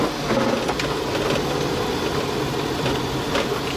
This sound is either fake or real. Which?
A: real